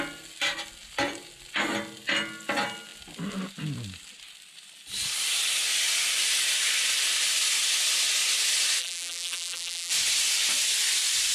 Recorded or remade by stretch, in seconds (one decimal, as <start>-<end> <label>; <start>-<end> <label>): 0.0-8.8 recorded; 8.8-9.9 remade; 9.9-11.3 recorded